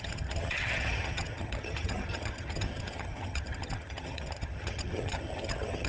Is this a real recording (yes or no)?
no